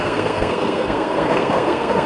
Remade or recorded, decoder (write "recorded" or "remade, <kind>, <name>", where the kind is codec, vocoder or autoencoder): remade, codec, SNAC